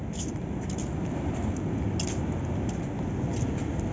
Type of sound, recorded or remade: recorded